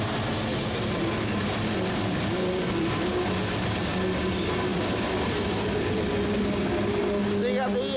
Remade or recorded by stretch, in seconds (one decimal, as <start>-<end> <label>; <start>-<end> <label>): 0.0-8.0 recorded